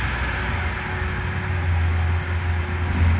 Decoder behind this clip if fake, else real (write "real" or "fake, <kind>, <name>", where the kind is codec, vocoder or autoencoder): real